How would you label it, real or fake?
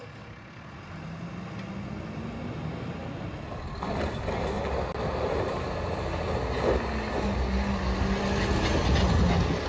real